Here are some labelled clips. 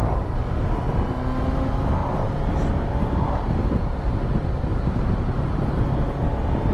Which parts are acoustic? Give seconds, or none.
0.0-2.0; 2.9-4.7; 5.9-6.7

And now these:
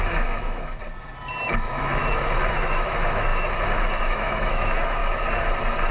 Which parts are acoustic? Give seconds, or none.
0.8-1.4; 2.0-2.5; 3.3-4.0; 5.0-5.9

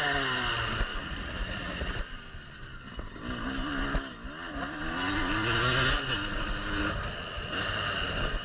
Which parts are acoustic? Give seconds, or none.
0.0-0.9; 2.0-8.4